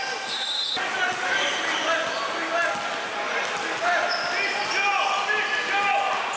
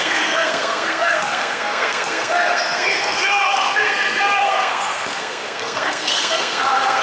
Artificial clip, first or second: second